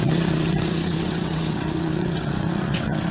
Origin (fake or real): fake